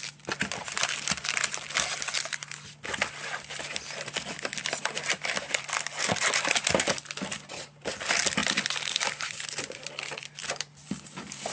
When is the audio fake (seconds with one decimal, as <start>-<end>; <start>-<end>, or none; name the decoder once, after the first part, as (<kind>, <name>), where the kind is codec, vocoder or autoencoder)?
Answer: 4.6-5.6 (vocoder, BigVGAN v2); 8.4-9.6; 10.4-11.5